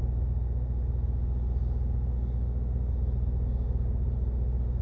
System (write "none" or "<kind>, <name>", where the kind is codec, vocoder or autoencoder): none